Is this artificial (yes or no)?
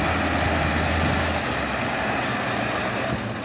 no